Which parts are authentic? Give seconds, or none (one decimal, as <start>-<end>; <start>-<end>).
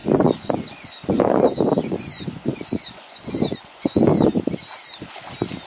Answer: 4.1-5.7